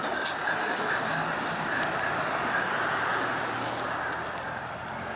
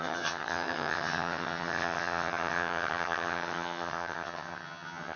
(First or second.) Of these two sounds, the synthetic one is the second